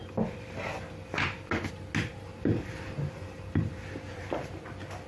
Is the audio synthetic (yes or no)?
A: no